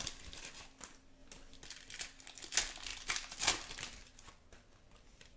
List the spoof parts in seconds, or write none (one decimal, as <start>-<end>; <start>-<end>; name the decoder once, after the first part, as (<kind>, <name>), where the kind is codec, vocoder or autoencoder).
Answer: none